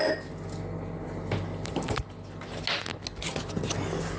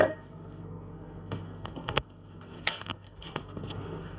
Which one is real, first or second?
first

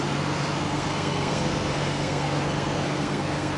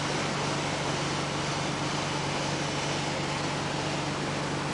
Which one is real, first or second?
second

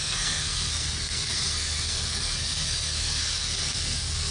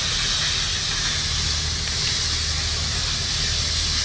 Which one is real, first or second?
second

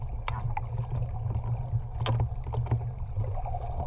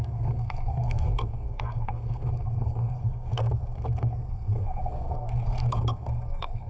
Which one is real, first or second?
first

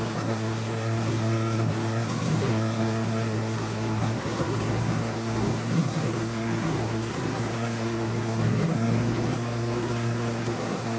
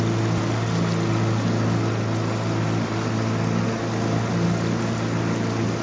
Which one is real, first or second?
second